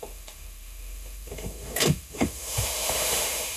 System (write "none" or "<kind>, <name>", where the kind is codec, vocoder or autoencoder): autoencoder, DAC-VAE